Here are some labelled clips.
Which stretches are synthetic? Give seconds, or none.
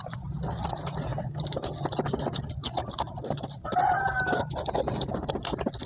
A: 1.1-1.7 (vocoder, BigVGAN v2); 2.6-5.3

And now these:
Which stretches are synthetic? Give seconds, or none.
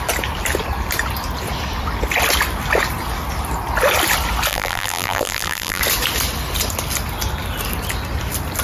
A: 4.5-5.8 (vocoder, BigVGAN v2)